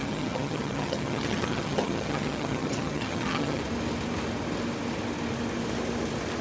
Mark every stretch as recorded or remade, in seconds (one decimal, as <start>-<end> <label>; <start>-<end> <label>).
0.0-3.6 remade; 3.6-6.4 recorded